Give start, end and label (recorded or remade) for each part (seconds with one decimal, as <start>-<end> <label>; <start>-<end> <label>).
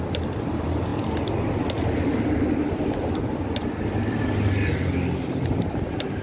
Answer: 0.0-6.2 recorded